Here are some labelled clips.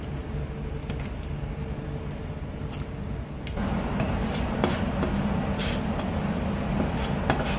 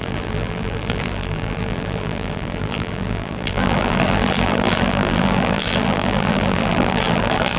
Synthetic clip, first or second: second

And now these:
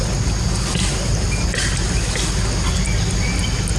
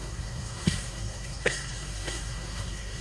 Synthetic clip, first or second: second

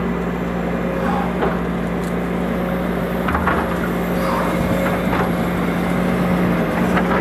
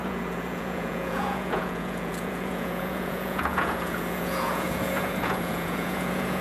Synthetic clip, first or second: second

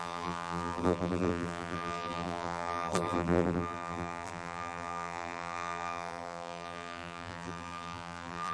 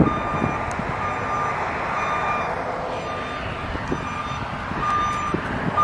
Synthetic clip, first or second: first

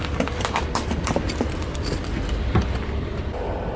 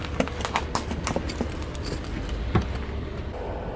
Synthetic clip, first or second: first